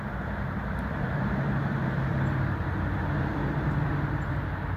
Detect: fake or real fake